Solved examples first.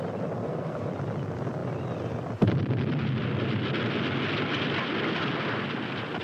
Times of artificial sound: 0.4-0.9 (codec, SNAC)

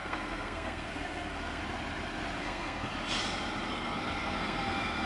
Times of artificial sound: 0.0-1.6 (codec, SNAC); 2.4-2.9; 3.7-5.1

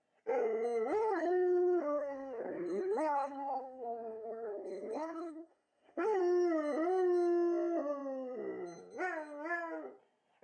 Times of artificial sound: 1.0-6.2 (codec, SNAC)

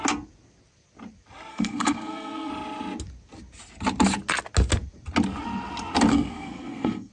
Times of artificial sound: 1.5-2.5 (codec, SNAC); 6.1-7.1

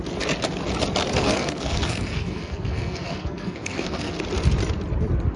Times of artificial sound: 1.0-4.2 (codec, SNAC)